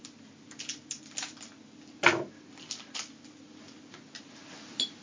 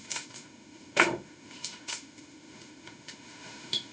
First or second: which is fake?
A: second